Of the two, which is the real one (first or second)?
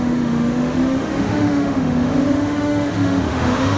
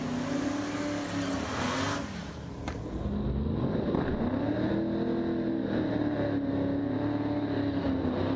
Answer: second